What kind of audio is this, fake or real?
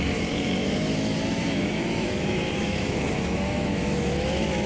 fake